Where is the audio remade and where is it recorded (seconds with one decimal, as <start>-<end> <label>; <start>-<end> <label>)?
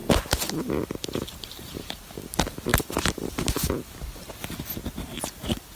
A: 0.0-2.2 remade; 2.2-2.7 recorded; 2.7-3.3 remade; 3.3-5.1 recorded; 5.1-5.8 remade